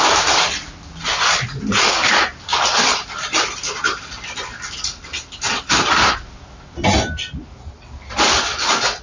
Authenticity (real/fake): real